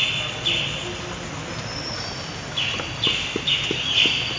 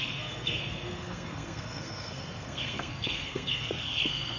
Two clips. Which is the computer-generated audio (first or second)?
second